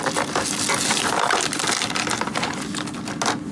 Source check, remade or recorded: recorded